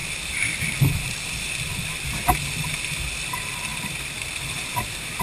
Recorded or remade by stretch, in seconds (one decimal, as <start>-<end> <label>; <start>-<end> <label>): 0.0-3.1 remade; 3.1-3.7 recorded; 3.7-5.2 remade